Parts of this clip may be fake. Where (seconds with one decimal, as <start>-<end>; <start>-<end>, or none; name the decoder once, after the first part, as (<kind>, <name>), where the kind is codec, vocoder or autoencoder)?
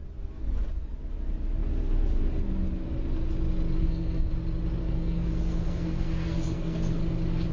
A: 3.8-4.3 (codec, SNAC); 4.8-7.0